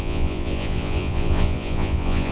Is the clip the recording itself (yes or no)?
no